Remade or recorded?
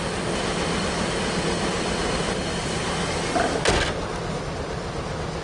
recorded